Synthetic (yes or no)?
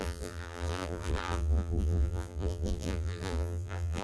yes